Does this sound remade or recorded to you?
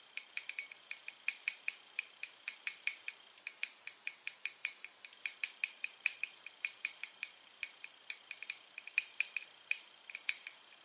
remade